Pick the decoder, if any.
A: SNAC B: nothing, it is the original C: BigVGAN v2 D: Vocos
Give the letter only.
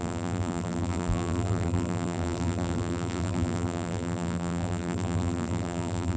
C